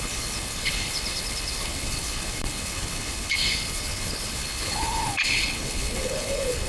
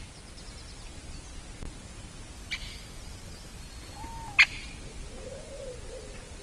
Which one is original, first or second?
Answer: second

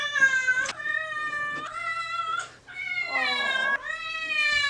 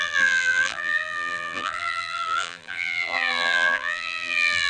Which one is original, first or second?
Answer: first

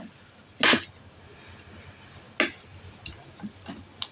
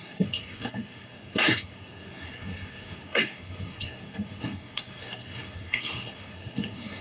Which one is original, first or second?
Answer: first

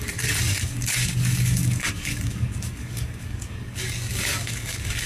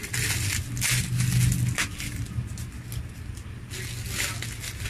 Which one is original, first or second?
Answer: second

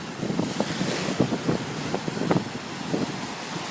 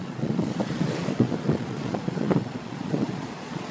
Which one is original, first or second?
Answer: first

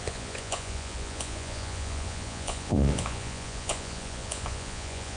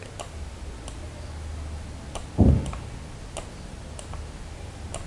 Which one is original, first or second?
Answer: second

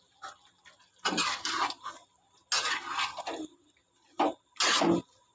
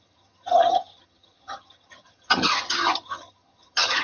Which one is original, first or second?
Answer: first